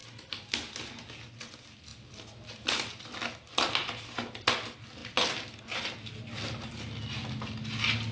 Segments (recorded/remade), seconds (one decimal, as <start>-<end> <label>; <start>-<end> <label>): 0.0-8.1 recorded